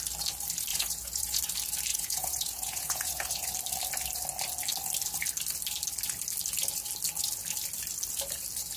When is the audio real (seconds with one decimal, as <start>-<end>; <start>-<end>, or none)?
0.0-0.7; 1.4-1.9; 3.5-8.8